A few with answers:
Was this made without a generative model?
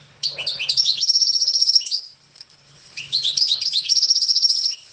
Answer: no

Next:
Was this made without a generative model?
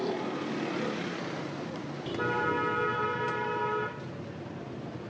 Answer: yes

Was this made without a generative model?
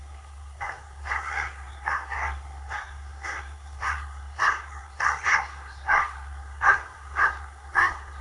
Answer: no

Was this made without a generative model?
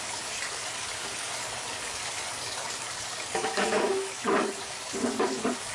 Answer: no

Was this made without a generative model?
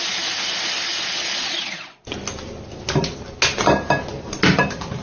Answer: yes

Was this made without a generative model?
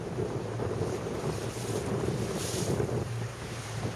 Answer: no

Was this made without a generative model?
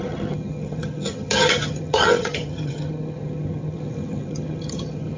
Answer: no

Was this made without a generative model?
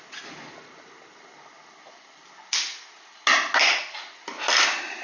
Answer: yes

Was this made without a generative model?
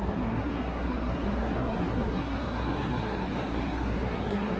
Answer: no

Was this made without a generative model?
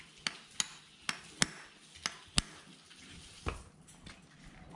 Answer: yes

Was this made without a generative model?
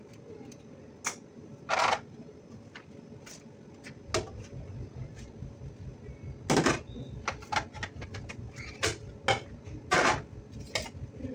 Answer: yes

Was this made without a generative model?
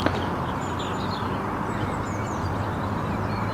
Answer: yes